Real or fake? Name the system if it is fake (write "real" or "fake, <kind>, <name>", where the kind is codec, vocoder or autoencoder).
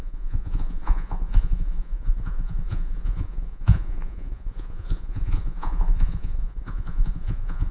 fake, vocoder, Vocos